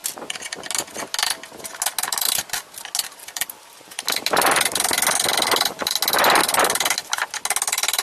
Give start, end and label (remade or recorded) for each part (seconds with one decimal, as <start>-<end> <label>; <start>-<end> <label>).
0.0-3.2 recorded; 3.2-4.0 remade; 4.0-8.0 recorded